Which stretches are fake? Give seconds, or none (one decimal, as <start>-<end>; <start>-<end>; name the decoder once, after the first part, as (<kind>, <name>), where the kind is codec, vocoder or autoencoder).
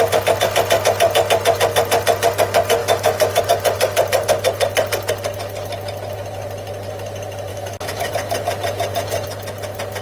2.8-3.4 (autoencoder, DAC-VAE); 7.5-8.1